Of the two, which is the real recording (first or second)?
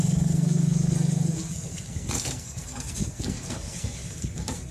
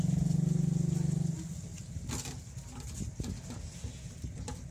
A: second